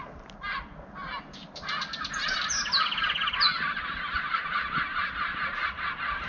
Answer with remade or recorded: recorded